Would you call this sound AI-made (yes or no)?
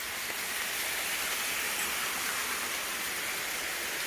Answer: no